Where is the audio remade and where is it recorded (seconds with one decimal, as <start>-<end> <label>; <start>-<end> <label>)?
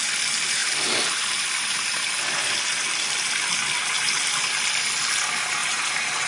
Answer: 0.0-5.6 recorded; 5.6-6.3 remade